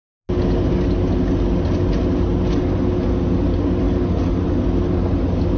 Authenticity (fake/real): real